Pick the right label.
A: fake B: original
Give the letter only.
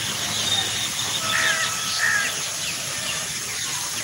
B